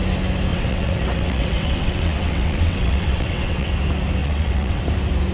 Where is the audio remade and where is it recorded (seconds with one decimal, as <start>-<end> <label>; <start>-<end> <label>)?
0.0-0.5 recorded; 0.5-3.7 remade; 3.7-4.2 recorded; 4.2-4.8 remade; 4.8-5.3 recorded